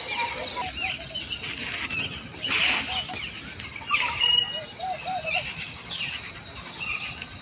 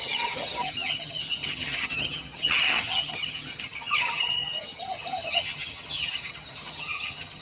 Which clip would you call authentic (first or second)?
first